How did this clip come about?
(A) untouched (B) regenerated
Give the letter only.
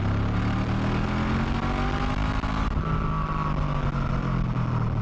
A